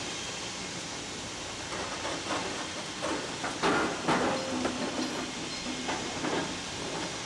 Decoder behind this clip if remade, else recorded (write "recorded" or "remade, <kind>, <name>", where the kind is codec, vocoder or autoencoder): recorded